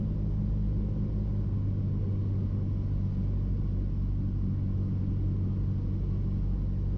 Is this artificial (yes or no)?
no